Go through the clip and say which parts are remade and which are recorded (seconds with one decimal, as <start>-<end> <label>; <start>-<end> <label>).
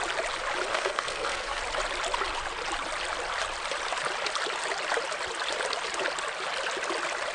0.0-0.7 recorded; 0.7-1.6 remade; 1.6-7.3 recorded